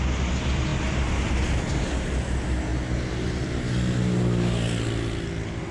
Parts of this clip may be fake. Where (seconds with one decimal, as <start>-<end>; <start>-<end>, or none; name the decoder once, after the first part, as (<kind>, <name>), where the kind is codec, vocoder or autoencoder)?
none